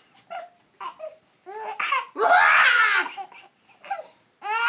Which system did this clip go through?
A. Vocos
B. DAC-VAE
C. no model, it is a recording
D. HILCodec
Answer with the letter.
C